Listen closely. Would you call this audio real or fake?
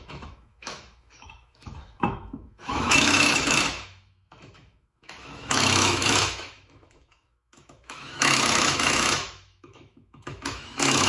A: fake